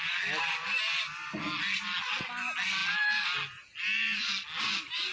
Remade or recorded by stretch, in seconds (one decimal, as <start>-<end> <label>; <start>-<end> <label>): 0.0-5.1 recorded